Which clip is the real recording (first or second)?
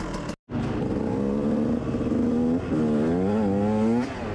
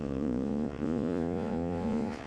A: first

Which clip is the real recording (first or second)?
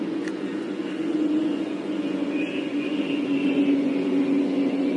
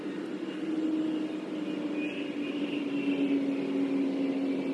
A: second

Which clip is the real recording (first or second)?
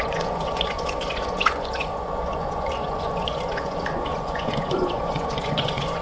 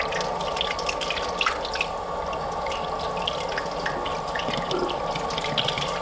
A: second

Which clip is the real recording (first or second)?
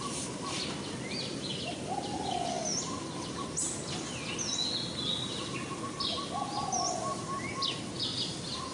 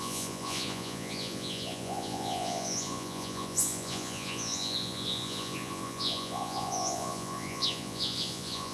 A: first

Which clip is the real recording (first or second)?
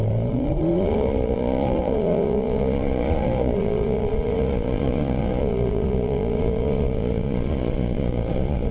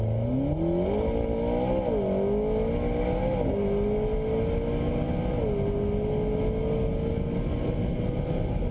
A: second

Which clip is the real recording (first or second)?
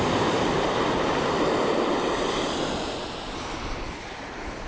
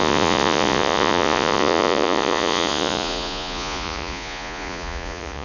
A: first